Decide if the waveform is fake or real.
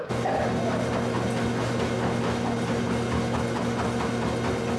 real